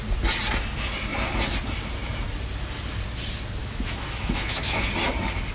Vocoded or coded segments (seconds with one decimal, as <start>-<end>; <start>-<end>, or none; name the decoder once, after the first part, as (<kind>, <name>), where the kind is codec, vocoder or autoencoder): 3.6-4.9 (autoencoder, DAC-VAE)